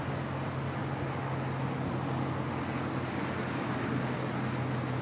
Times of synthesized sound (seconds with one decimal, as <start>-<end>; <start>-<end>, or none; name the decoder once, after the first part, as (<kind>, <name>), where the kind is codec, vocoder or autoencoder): none